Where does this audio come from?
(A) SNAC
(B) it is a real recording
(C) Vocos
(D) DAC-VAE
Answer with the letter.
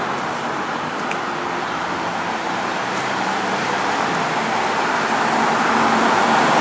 B